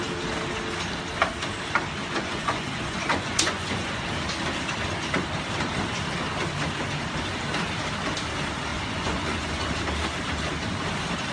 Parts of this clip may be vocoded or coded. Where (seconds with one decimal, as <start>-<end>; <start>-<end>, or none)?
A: 2.0-4.0; 8.7-9.7